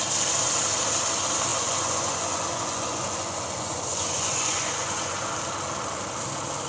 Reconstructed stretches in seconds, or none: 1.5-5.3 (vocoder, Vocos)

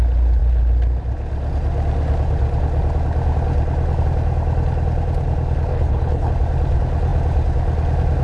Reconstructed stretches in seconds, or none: 5.7-6.3 (codec, HILCodec)

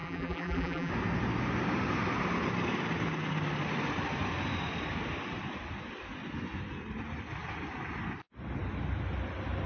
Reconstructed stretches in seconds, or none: 0.0-0.9 (vocoder, BigVGAN v2)

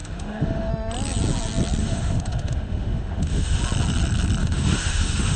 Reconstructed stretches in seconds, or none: 0.0-0.7 (autoencoder, DAC-VAE); 1.8-3.6; 4.4-5.4

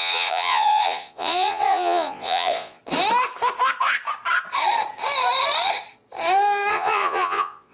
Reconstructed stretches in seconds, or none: 0.0-2.8 (vocoder, Vocos); 6.7-7.7